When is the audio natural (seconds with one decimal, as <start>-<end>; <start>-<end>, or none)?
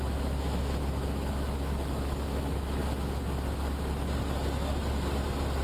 2.8-5.6